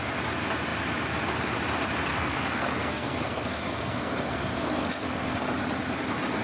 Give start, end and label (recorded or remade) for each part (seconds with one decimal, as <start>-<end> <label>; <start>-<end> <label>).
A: 0.0-2.1 recorded; 2.1-5.5 remade; 5.5-6.4 recorded